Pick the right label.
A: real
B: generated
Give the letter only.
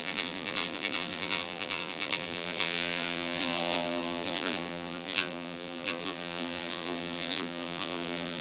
B